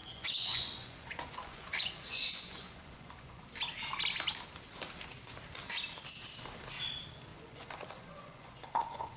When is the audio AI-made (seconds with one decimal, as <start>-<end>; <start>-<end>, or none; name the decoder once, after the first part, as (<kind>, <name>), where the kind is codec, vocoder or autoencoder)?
0.0-3.4 (vocoder, Vocos); 7.3-9.2